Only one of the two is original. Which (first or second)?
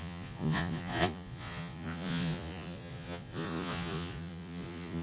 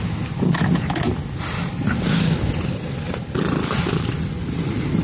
second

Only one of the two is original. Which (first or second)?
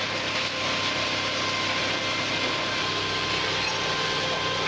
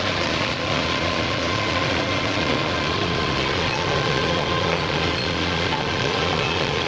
first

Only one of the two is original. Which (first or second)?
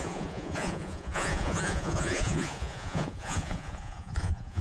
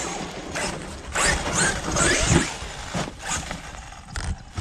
second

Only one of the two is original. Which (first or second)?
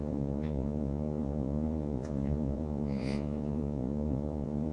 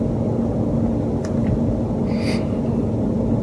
second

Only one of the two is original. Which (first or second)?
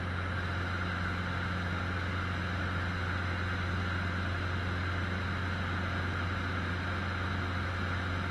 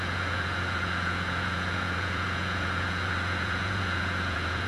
first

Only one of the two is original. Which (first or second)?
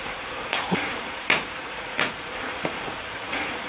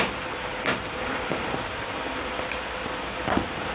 second